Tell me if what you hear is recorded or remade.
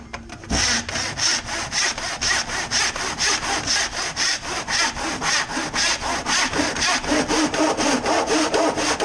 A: recorded